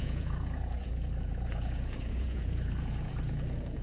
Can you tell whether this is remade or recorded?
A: remade